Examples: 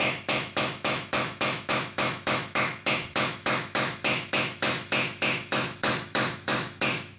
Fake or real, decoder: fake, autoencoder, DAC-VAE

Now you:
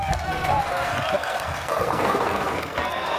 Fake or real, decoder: fake, codec, SNAC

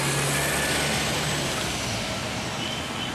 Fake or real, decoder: real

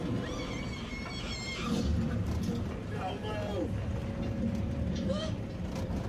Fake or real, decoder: real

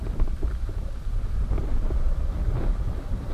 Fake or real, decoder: real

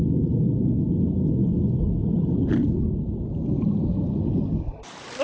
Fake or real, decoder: real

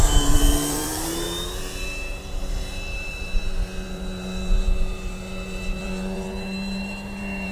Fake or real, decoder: fake, vocoder, BigVGAN v2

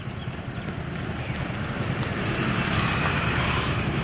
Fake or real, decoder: real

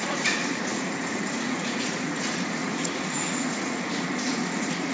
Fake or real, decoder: fake, vocoder, Vocos